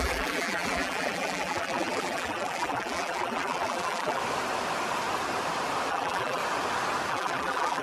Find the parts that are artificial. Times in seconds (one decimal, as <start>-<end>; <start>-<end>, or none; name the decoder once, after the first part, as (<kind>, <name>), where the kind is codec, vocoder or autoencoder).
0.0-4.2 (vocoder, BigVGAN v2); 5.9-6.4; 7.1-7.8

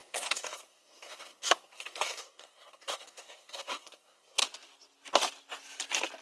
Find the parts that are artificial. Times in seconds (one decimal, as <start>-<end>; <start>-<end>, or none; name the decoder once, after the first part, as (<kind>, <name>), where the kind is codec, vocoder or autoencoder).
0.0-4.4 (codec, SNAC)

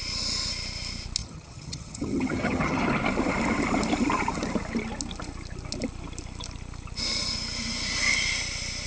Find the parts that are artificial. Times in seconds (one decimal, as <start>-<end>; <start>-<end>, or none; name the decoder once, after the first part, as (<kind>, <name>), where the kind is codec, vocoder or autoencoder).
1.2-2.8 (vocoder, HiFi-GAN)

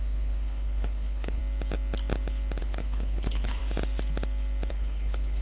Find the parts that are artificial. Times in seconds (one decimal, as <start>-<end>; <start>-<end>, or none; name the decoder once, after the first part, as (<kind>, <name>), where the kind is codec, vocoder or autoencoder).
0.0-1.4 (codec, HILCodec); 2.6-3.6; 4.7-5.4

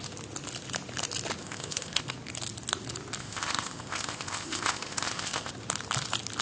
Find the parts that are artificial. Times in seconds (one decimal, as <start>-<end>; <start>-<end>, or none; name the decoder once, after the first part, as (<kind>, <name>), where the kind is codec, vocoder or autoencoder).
1.4-2.0 (codec, ZipCodec); 3.2-5.5